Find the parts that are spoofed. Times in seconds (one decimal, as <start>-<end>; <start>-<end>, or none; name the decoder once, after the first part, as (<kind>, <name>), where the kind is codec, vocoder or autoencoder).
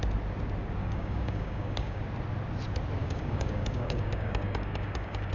0.8-2.0 (codec, DAC); 3.0-5.3